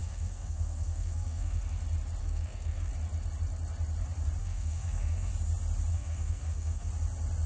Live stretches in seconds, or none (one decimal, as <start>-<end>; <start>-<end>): 1.6-2.2; 2.9-4.4; 5.3-5.9; 6.9-7.5